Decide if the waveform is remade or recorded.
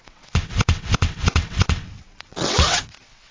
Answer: remade